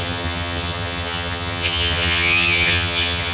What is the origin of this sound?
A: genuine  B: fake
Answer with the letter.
B